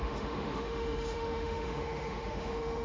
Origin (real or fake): fake